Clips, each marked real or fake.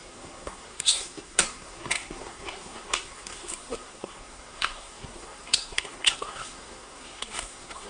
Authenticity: fake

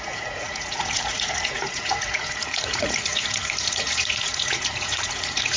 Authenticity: fake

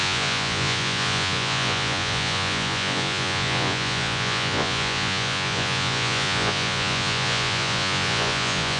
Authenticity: fake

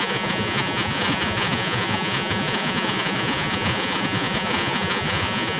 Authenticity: fake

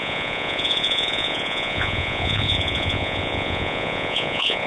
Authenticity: fake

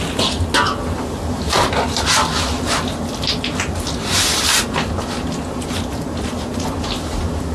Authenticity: real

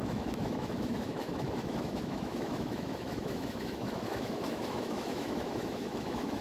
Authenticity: fake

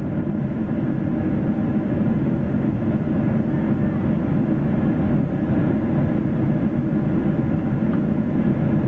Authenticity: real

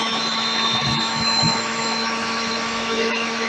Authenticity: fake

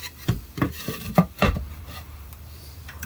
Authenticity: fake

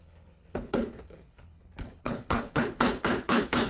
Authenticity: fake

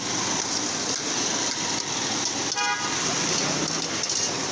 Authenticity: real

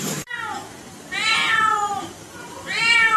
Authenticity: fake